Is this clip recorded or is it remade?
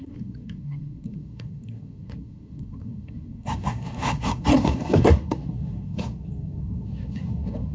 remade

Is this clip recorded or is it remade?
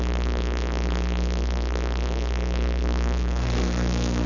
remade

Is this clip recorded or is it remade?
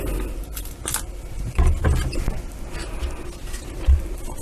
recorded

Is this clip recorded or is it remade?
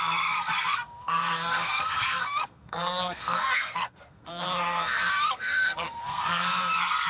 remade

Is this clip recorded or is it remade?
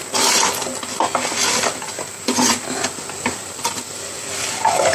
recorded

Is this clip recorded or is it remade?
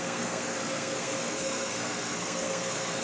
remade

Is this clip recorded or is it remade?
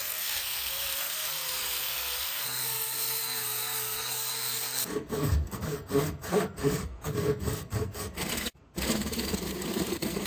remade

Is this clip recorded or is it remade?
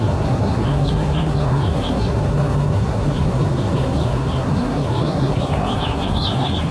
remade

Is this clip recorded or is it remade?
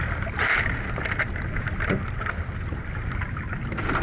recorded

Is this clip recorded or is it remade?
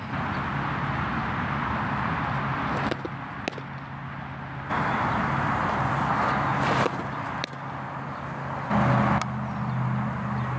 recorded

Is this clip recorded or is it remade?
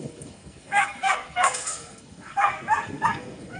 remade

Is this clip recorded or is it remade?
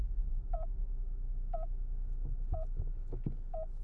recorded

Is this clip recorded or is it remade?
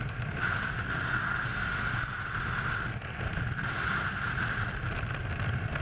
recorded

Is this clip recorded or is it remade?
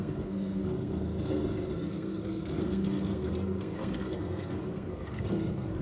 remade